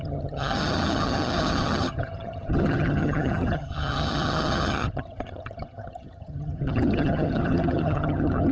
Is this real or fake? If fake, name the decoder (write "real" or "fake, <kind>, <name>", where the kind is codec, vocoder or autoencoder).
fake, vocoder, HiFi-GAN